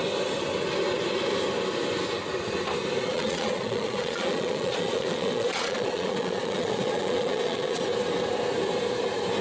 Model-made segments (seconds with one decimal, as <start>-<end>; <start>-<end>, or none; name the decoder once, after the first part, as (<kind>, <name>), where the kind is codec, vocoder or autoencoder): 3.1-7.8 (vocoder, Vocos)